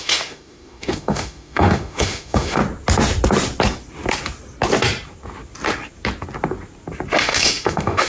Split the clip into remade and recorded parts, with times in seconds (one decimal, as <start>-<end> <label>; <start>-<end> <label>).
0.0-2.6 remade; 2.6-7.2 recorded; 7.2-8.1 remade